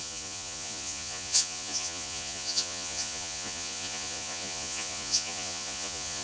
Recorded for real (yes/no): no